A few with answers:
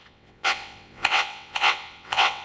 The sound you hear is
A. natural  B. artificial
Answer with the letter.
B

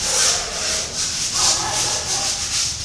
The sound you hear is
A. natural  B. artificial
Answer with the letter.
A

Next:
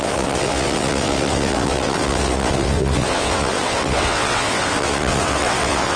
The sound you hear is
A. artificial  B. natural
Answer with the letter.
A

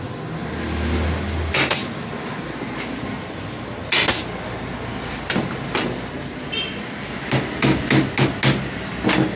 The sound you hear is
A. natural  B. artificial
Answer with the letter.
A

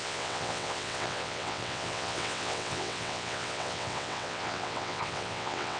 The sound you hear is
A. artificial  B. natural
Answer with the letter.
A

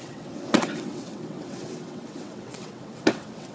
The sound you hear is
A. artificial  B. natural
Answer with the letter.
A